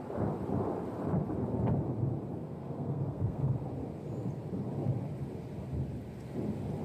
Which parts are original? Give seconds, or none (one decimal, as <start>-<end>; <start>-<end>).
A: 0.0-2.3; 3.5-6.8